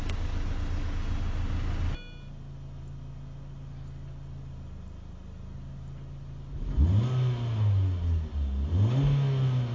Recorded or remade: recorded